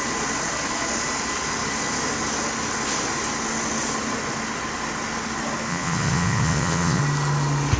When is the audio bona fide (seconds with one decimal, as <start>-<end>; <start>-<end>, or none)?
0.0-5.7; 7.0-7.8